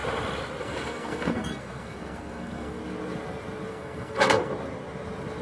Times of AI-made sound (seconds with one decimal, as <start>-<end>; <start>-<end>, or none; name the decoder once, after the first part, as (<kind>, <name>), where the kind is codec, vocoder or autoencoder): 0.6-2.8 (codec, SNAC); 3.7-4.5